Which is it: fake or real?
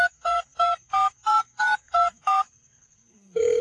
fake